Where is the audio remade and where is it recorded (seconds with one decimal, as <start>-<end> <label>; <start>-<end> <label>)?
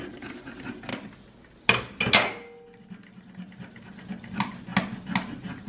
0.0-5.7 recorded